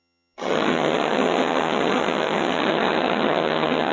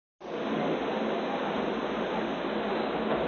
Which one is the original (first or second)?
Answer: second